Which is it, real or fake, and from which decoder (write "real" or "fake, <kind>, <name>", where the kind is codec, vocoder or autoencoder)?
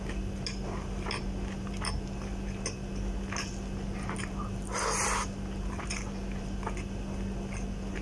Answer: real